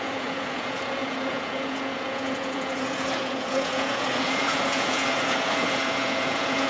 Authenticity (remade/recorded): remade